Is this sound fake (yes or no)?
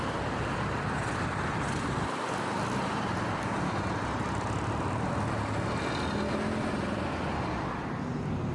no